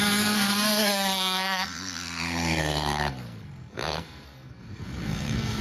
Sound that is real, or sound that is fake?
fake